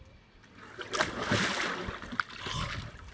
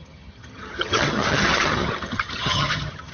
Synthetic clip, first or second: second